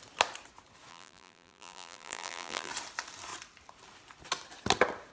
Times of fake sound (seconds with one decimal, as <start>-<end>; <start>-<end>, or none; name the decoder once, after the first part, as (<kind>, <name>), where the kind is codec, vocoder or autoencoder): 0.9-2.7 (vocoder, BigVGAN v2)